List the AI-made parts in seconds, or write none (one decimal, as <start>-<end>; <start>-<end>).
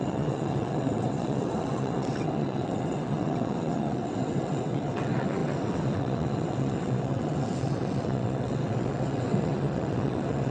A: 0.0-10.5